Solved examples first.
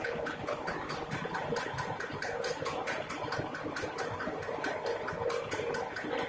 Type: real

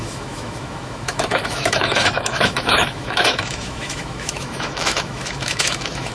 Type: fake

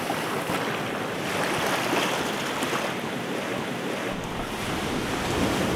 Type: real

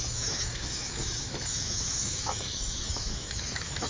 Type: fake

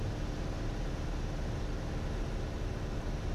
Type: real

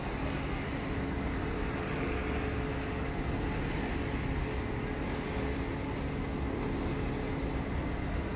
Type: real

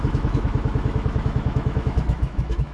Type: fake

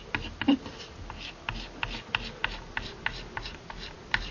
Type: real